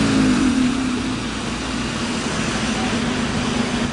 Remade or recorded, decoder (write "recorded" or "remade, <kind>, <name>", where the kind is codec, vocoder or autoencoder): recorded